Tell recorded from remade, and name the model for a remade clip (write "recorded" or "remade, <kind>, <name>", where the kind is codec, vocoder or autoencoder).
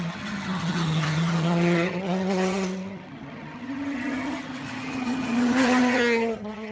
remade, vocoder, HiFi-GAN